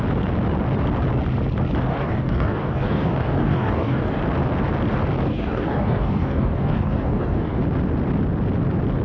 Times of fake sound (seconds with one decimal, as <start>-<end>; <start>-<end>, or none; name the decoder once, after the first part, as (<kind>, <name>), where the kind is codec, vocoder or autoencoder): 1.9-4.2 (codec, DAC); 5.3-7.6